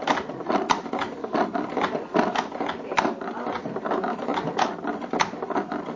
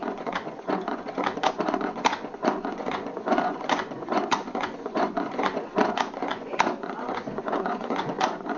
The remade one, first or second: second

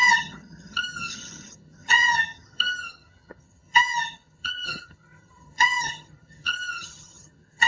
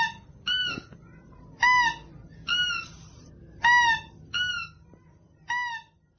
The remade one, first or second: first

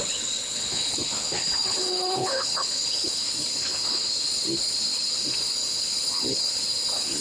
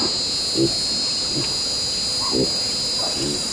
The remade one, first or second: first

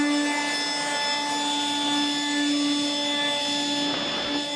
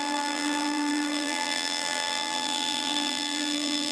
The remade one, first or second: second